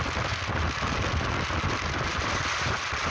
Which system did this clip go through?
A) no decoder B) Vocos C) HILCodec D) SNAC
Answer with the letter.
A